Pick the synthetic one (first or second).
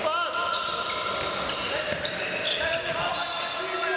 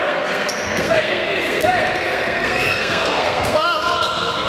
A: second